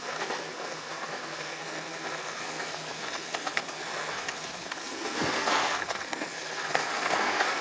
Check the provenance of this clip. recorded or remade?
remade